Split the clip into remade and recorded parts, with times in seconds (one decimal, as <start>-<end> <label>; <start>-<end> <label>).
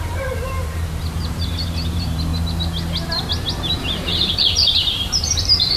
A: 0.0-2.3 remade; 2.3-3.7 recorded; 3.7-5.8 remade